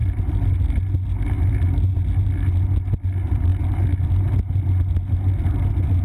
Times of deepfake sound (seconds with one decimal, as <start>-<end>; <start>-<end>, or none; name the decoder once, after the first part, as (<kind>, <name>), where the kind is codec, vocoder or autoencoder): none

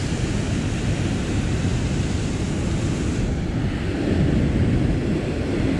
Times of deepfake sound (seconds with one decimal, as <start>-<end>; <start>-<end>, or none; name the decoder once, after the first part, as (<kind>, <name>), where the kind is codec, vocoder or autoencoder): none

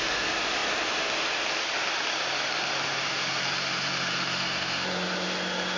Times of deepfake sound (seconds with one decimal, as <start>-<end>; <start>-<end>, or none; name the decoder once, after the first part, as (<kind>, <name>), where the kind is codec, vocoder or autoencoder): none

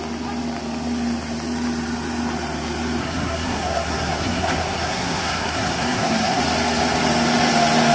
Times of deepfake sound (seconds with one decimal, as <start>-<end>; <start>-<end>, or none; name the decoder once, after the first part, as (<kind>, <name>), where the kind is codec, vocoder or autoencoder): 3.0-6.4 (codec, SNAC)